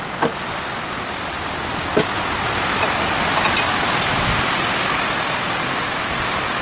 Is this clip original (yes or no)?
yes